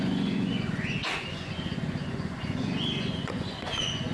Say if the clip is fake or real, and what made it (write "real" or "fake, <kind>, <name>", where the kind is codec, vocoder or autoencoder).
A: fake, vocoder, Vocos